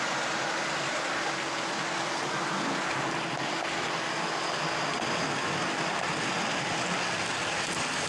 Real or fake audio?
real